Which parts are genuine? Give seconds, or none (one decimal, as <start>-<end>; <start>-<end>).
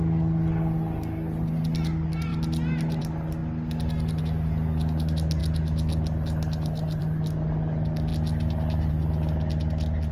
0.0-10.1